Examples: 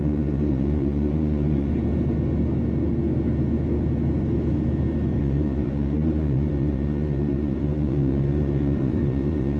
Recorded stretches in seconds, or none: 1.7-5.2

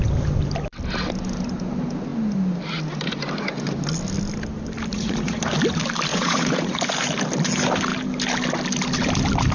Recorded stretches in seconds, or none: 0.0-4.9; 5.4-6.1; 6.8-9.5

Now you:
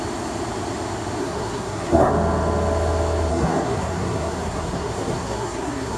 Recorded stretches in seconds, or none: 0.0-1.2; 2.1-3.3